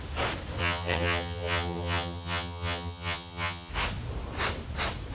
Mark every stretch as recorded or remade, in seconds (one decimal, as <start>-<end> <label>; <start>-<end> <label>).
0.0-0.6 recorded; 0.6-3.7 remade; 3.7-5.1 recorded